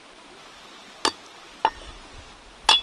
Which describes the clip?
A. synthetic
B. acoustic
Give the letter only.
B